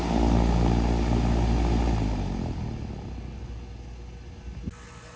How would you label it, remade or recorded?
recorded